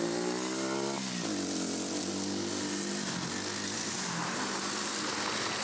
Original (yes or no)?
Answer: yes